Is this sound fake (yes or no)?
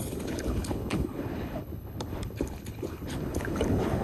yes